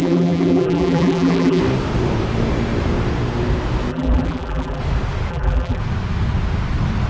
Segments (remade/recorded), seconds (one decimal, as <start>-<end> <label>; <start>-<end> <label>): 0.0-1.6 remade; 1.6-3.9 recorded; 3.9-4.8 remade; 4.8-5.3 recorded; 5.3-5.8 remade; 5.8-7.1 recorded